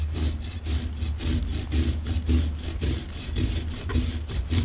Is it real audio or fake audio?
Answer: real